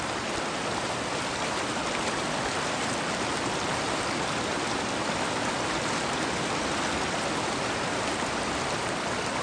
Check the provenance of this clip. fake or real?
real